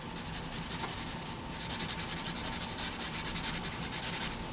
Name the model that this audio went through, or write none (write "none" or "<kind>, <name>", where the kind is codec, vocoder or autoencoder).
none